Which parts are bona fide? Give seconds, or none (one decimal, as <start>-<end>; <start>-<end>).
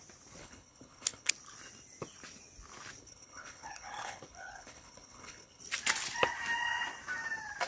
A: 0.0-0.4; 1.3-3.0; 5.6-7.7